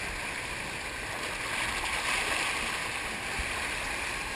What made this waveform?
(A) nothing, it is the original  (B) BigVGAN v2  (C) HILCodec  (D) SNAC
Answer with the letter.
A